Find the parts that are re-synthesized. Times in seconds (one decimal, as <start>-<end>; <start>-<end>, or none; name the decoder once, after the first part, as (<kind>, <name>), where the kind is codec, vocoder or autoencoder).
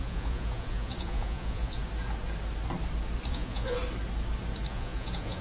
0.0-1.8 (vocoder, Vocos); 3.3-3.8; 4.7-5.4